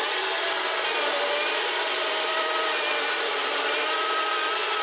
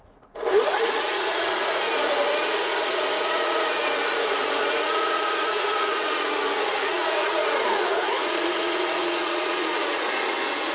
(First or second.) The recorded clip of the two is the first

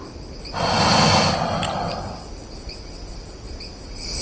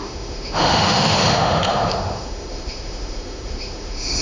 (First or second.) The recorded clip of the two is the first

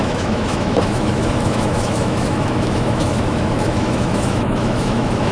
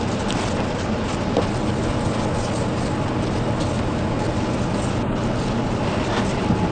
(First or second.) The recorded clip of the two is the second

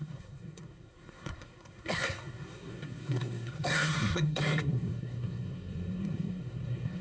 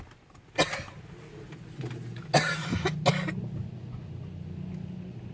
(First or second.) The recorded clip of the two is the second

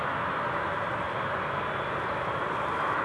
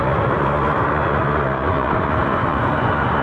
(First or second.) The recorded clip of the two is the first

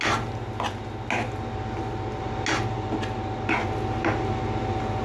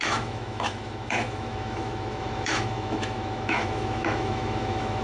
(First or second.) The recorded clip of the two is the first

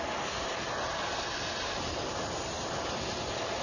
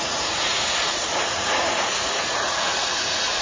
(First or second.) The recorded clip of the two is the first